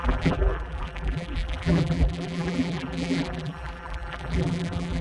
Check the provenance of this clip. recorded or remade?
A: remade